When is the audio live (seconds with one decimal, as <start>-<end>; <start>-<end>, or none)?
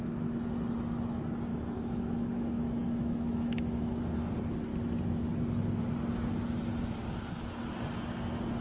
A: 0.0-1.5; 4.0-8.6